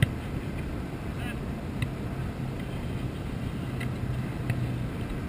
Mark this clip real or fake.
real